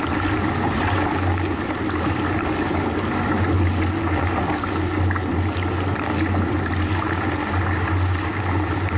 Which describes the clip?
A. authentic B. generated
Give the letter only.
A